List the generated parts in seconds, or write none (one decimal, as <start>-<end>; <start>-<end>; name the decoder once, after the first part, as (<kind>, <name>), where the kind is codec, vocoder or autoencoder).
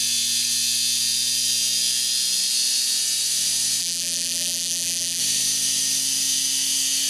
3.8-5.2 (vocoder, BigVGAN v2)